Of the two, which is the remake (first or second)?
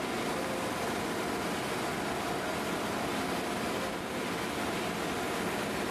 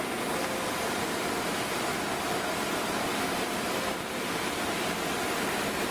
second